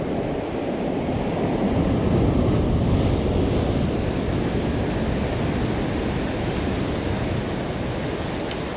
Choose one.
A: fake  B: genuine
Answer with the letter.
B